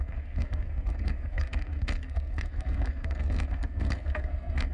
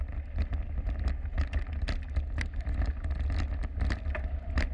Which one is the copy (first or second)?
first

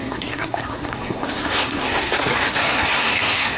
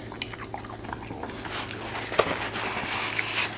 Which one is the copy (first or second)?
first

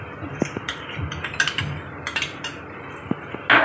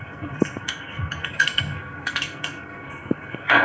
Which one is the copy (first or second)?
second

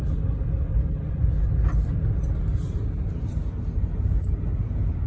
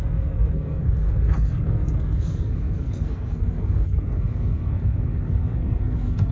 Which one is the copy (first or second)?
second